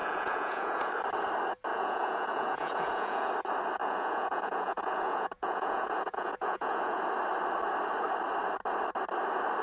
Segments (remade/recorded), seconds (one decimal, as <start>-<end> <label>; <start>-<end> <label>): 0.0-0.9 remade; 0.9-1.7 recorded; 1.7-3.3 remade; 3.3-3.8 recorded; 3.8-7.0 remade; 7.0-9.6 recorded